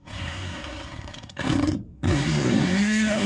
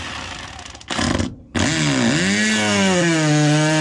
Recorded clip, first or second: second